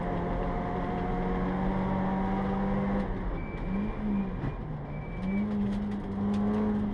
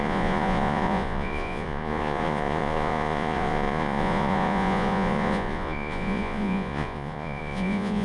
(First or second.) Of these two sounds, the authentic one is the first